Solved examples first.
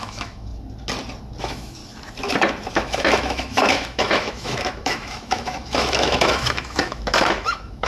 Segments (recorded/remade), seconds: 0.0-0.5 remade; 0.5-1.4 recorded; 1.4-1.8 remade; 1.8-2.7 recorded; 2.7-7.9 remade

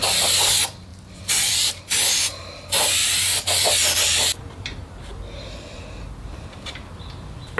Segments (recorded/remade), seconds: 0.0-0.9 recorded; 0.9-1.8 remade; 1.8-7.6 recorded